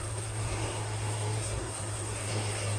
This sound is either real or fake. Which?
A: fake